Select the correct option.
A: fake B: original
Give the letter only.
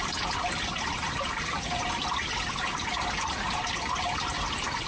B